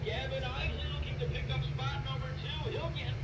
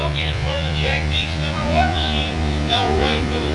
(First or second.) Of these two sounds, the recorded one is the first